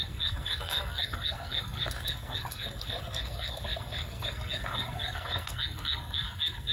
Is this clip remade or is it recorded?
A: remade